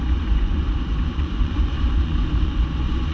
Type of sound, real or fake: fake